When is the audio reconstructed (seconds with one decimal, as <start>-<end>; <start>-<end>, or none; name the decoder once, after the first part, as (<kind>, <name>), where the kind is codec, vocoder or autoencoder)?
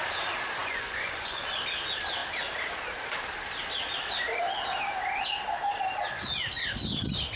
0.6-1.5 (vocoder, Vocos)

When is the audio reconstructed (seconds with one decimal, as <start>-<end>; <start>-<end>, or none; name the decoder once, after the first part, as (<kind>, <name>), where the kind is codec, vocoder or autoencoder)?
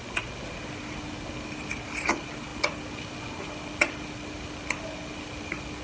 none